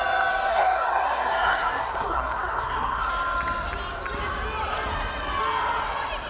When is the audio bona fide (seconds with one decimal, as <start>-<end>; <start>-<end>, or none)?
0.0-0.5; 3.1-6.3